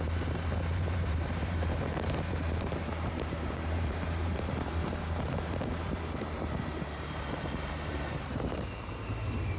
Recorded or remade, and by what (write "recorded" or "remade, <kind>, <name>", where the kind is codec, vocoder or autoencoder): remade, vocoder, BigVGAN v2